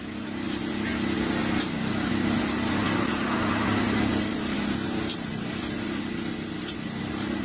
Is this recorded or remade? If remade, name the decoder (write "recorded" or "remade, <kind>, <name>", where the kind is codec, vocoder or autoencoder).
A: recorded